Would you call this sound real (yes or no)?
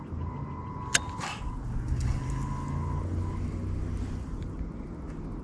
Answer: yes